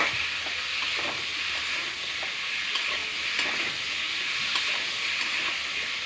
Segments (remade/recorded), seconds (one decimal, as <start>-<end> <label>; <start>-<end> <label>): 0.0-6.1 recorded